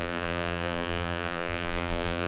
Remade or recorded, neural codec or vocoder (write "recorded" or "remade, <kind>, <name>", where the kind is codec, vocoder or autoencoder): remade, vocoder, BigVGAN v2